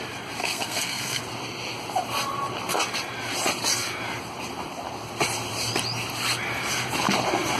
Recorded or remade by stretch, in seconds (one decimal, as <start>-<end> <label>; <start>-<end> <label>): 0.0-0.4 recorded; 0.4-1.2 remade; 1.2-7.6 recorded